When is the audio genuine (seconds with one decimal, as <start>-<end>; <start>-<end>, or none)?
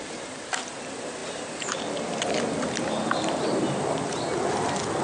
0.0-5.0